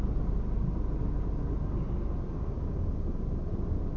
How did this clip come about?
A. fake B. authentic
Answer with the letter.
B